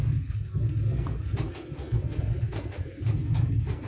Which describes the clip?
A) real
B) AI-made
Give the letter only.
B